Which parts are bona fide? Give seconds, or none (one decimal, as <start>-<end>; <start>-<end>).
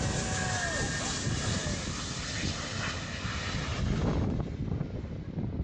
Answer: 0.0-5.6